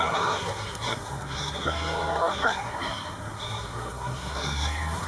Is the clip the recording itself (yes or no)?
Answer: no